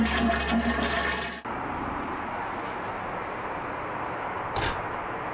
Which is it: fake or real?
real